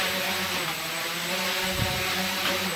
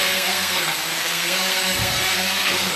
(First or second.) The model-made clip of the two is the second